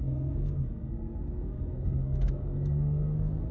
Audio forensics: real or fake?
fake